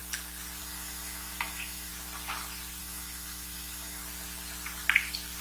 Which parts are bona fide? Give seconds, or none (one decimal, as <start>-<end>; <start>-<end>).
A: 0.0-0.6; 1.9-2.8; 4.0-5.4

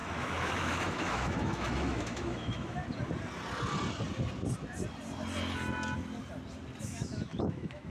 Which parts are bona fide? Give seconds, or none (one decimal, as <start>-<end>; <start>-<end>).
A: 2.8-6.8

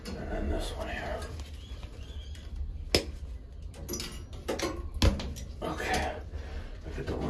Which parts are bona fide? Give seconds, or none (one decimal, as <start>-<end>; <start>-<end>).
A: 0.0-7.3

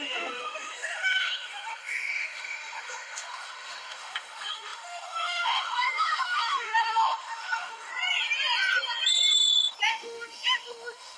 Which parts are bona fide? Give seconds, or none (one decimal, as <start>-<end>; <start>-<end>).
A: 7.9-9.9

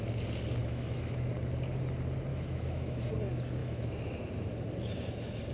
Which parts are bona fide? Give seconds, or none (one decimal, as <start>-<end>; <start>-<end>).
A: 0.0-0.6; 1.3-2.3; 3.1-3.6; 4.3-5.5

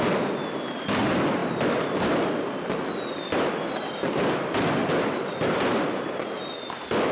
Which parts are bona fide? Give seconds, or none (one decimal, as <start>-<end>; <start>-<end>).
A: 0.0-7.1